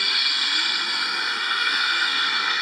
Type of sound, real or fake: fake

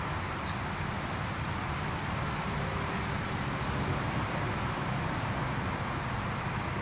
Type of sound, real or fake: real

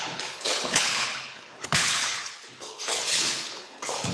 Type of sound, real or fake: fake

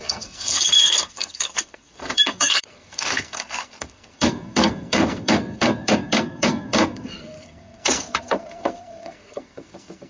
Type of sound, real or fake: fake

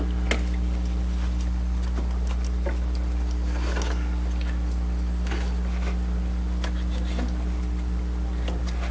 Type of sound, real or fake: real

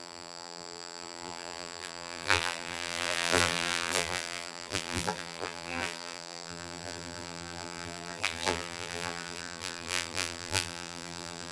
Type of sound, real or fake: fake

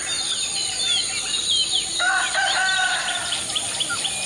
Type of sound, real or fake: real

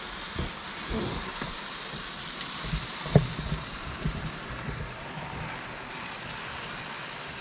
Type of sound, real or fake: real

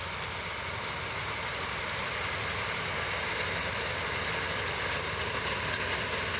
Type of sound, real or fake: real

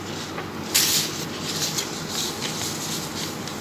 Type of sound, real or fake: real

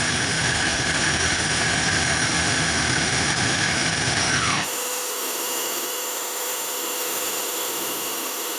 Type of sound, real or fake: fake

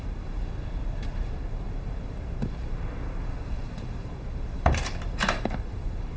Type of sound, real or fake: fake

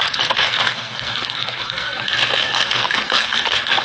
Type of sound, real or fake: fake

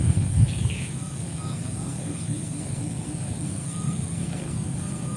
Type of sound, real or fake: fake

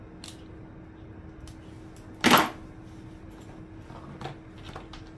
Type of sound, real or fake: real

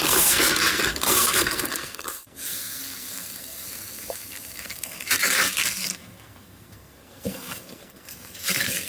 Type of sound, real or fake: fake